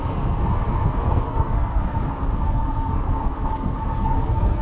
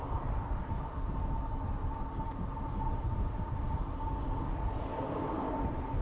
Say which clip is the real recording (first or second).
second